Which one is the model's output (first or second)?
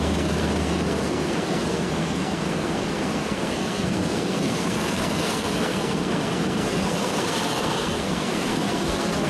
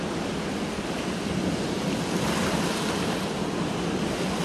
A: first